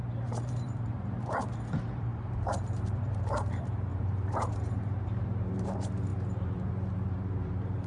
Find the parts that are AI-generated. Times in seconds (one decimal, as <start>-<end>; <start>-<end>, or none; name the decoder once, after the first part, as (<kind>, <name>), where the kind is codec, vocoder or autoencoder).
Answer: 0.0-7.9 (vocoder, BigVGAN v2)